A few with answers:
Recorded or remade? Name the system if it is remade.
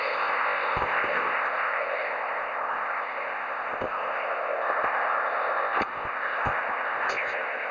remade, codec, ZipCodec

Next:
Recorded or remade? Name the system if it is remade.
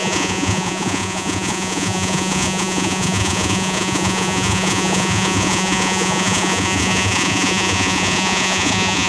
remade, vocoder, Vocos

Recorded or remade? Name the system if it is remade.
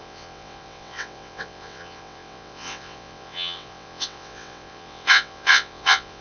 remade, vocoder, WaveNeXt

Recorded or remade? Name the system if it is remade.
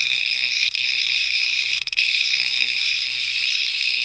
remade, codec, SNAC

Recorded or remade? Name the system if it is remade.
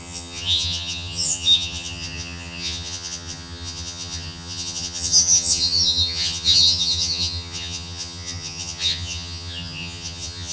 remade, vocoder, HiFi-GAN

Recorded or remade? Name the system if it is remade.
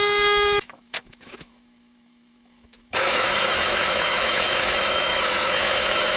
remade, autoencoder, DAC-VAE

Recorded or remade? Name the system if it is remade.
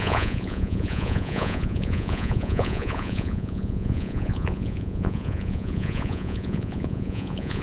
remade, vocoder, Vocos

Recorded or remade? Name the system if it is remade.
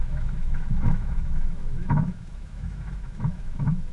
remade, autoencoder, DAC-VAE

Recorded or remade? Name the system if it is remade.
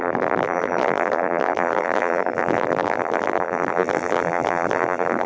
remade, vocoder, BigVGAN v2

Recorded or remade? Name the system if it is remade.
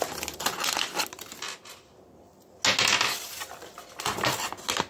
recorded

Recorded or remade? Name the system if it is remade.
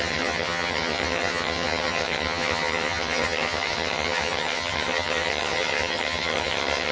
remade, vocoder, HiFi-GAN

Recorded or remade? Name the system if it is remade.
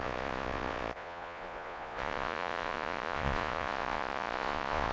remade, vocoder, Vocos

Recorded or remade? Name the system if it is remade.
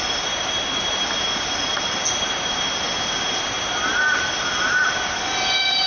recorded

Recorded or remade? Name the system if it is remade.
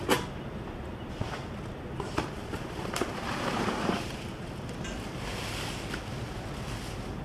remade, vocoder, BigVGAN v2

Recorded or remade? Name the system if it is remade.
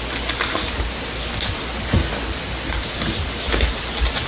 recorded